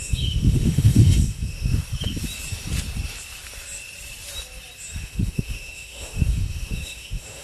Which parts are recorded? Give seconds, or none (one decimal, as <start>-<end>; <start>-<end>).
1.8-5.0

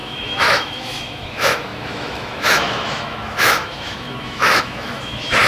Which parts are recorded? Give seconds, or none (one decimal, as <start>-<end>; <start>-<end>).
none